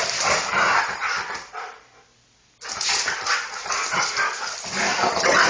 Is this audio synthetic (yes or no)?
no